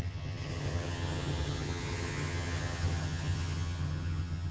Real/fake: fake